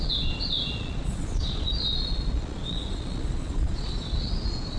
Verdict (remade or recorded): remade